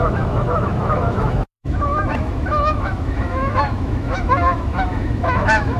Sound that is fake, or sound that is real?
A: fake